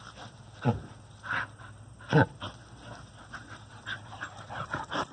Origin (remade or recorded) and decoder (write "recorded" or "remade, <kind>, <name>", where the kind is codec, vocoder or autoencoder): recorded